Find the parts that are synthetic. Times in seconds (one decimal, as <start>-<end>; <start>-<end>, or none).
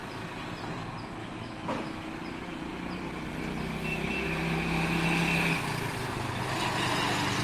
1.2-2.2